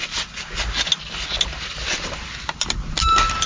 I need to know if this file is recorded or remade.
recorded